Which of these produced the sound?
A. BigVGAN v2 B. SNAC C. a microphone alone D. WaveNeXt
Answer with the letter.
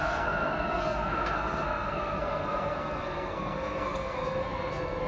B